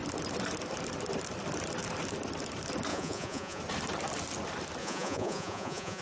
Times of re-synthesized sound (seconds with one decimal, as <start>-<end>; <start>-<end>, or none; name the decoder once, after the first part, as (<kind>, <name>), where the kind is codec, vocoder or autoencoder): 2.9-3.6 (vocoder, Vocos); 4.8-6.0